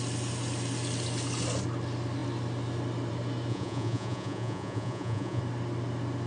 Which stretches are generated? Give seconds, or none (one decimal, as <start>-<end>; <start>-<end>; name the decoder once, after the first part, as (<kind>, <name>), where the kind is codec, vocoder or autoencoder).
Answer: 3.5-5.4 (vocoder, Vocos)